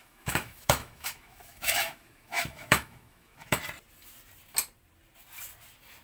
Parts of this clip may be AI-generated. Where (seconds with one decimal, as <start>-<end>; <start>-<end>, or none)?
0.0-3.6